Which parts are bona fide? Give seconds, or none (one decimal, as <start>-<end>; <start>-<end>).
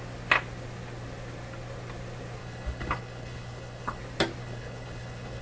0.0-2.4; 4.0-4.4